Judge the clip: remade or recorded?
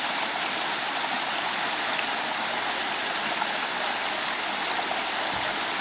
recorded